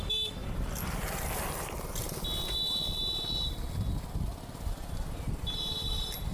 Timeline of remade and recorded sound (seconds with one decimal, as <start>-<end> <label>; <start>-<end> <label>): 0.0-0.4 recorded; 0.4-1.2 remade; 1.2-4.8 recorded; 4.8-5.5 remade; 5.5-6.3 recorded